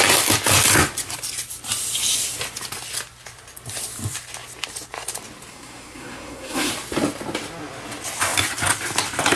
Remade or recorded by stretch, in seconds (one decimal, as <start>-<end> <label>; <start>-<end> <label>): 0.0-5.5 recorded; 5.5-6.7 remade; 6.7-9.4 recorded